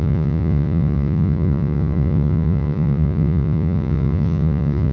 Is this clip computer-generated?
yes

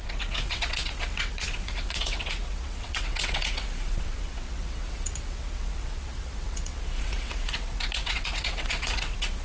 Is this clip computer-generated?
yes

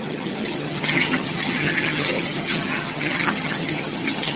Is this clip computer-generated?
yes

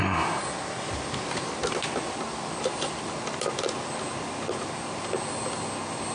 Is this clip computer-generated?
no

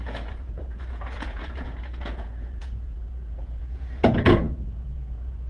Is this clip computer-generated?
yes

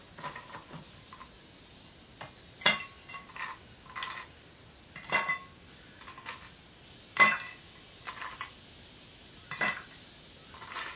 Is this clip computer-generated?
no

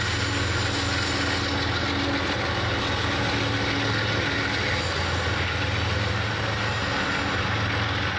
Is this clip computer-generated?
no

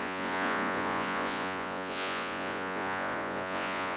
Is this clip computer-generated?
yes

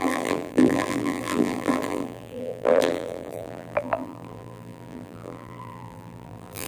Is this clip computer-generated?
yes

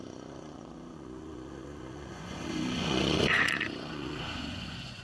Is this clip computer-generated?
yes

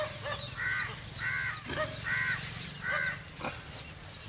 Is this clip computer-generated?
no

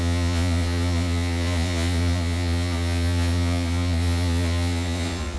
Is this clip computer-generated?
yes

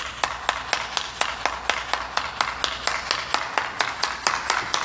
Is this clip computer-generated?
no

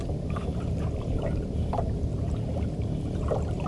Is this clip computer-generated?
yes